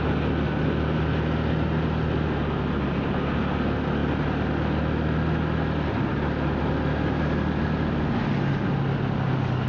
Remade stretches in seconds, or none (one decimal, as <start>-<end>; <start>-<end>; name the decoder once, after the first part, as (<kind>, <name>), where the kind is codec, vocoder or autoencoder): none